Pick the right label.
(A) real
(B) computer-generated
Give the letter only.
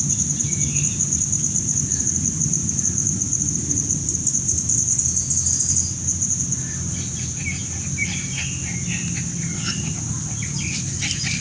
A